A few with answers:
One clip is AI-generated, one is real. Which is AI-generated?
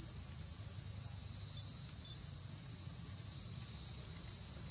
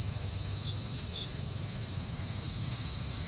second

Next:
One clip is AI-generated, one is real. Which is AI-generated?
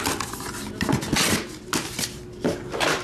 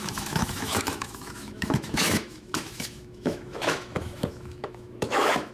second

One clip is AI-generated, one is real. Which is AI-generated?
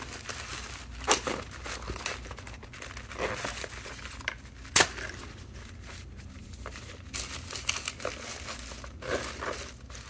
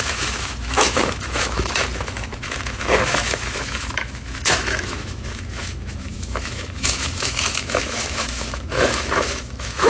second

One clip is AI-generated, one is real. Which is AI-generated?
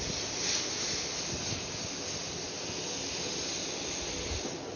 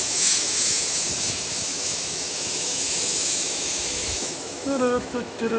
second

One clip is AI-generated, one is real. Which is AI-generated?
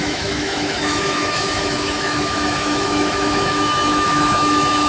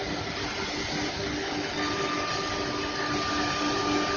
first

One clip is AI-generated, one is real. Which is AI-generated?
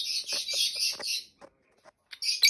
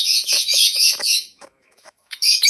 second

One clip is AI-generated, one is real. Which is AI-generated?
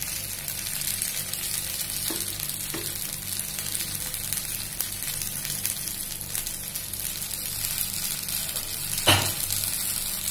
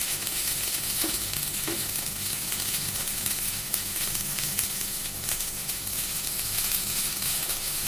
second